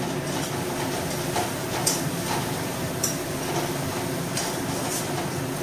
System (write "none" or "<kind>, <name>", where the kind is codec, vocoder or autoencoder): none